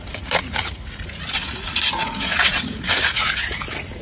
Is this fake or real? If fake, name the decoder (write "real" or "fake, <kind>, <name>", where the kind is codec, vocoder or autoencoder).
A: fake, vocoder, Vocos